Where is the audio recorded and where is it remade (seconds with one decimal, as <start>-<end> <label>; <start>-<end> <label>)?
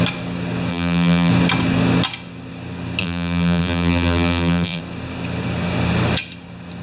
0.0-0.7 recorded; 0.7-1.3 remade; 1.3-3.0 recorded; 3.0-4.8 remade; 4.8-6.8 recorded